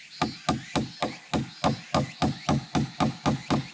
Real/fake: real